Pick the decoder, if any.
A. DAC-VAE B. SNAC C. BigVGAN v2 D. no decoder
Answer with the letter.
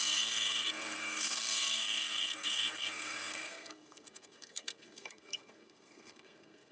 B